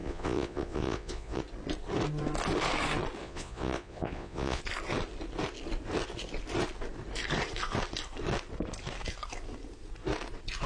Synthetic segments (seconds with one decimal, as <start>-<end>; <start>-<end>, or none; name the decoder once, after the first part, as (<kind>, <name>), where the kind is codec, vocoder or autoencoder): 0.0-1.4 (vocoder, Vocos); 3.2-4.6